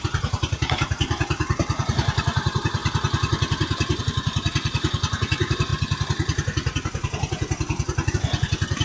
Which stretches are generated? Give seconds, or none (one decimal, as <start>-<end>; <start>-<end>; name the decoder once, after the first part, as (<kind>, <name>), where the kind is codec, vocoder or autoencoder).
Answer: 0.0-2.8 (vocoder, BigVGAN v2); 4.0-5.7; 8.1-8.8